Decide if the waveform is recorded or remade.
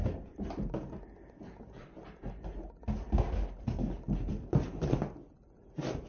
recorded